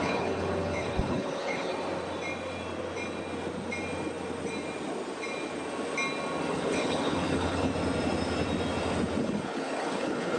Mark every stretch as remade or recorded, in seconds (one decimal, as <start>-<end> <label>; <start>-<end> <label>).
0.0-1.7 remade; 1.7-6.5 recorded; 6.5-7.7 remade; 7.7-9.2 recorded; 9.2-10.4 remade